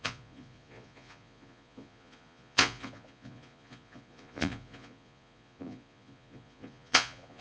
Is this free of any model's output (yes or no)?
no